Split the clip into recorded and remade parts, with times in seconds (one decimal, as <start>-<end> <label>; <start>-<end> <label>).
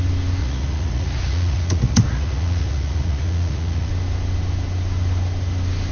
0.0-0.4 recorded; 0.4-3.9 remade; 3.9-5.9 recorded